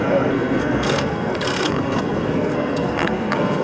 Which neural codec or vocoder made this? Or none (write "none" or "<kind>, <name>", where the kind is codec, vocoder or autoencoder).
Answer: codec, SNAC